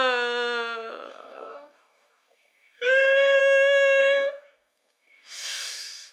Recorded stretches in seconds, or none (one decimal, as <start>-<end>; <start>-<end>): 0.0-1.1; 3.4-4.0